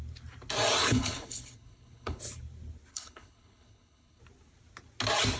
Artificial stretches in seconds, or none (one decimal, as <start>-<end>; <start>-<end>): 0.8-2.2; 2.9-4.2